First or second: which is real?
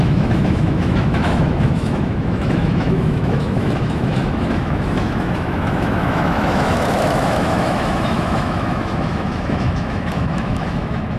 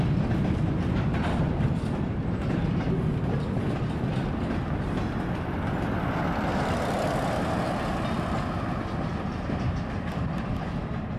second